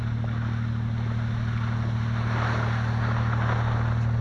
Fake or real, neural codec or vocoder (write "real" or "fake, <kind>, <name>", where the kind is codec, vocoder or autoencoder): real